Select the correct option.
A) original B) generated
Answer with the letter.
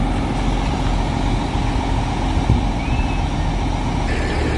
A